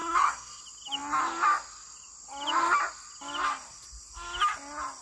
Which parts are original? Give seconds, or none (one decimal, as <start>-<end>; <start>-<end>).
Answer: 0.6-5.0